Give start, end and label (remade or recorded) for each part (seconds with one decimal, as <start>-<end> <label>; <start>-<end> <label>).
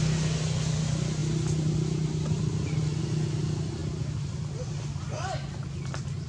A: 0.0-6.3 recorded